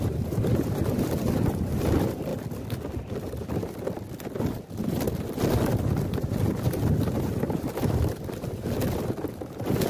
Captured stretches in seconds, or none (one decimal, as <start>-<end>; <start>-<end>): 0.0-9.9